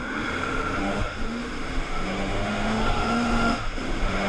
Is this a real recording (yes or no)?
no